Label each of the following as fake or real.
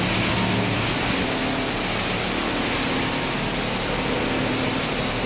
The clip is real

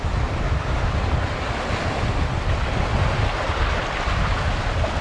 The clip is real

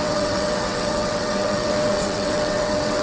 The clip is fake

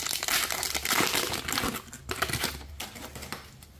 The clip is real